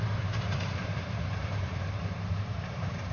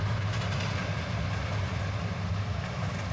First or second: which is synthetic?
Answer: first